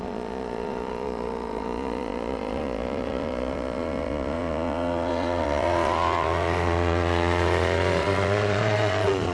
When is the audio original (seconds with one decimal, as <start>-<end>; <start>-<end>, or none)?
none